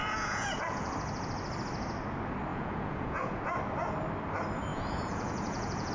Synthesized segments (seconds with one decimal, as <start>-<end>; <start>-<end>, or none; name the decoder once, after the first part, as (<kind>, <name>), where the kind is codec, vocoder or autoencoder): 0.0-0.9 (vocoder, Vocos); 2.5-3.4; 4.7-5.9